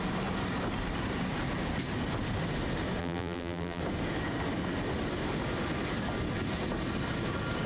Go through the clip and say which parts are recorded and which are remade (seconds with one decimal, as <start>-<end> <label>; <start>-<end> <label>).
0.0-3.0 recorded; 3.0-3.8 remade; 3.8-7.7 recorded